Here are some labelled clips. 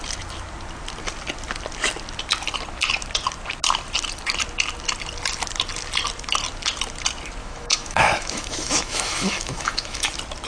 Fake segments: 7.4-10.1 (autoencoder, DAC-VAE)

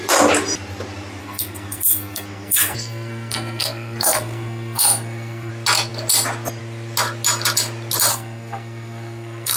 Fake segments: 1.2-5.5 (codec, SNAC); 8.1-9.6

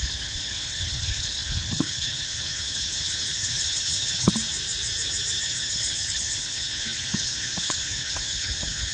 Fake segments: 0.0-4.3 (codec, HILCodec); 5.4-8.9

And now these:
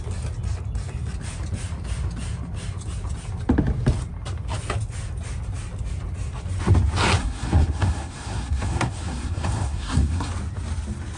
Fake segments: 7.2-10.3 (codec, SNAC)

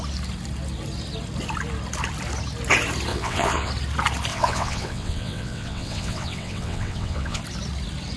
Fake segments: 3.1-3.7 (vocoder, WaveNeXt); 4.3-7.4

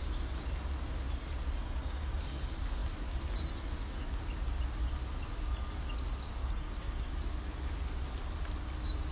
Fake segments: 1.6-2.2 (codec, DAC); 6.4-7.1

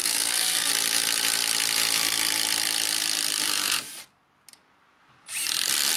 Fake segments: 0.0-0.7 (codec, SNAC)